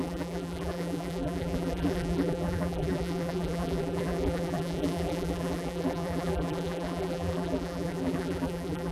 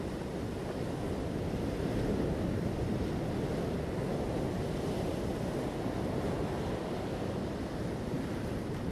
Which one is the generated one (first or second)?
first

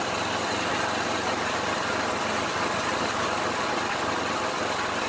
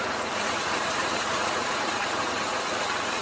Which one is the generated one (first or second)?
second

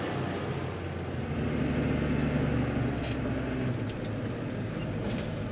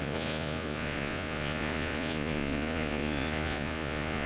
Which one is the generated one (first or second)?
second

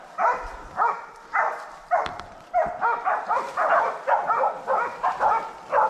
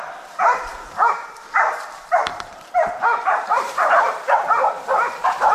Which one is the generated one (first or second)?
second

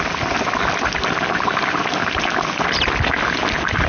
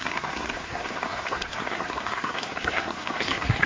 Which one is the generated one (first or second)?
second